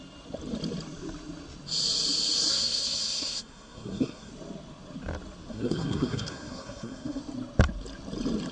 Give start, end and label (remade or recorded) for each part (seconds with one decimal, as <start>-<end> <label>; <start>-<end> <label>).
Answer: 0.0-2.5 recorded; 2.5-4.3 remade; 4.3-5.5 recorded; 5.5-7.2 remade; 7.2-8.5 recorded